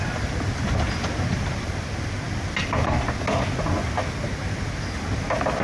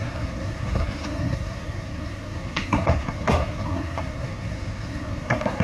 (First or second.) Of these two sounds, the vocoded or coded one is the second